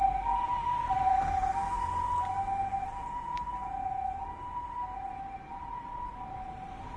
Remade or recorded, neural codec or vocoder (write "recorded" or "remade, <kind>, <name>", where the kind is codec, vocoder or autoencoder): recorded